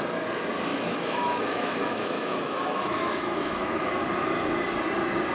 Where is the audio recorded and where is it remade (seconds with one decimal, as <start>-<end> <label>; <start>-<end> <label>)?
0.0-0.7 recorded; 0.7-3.9 remade; 3.9-5.3 recorded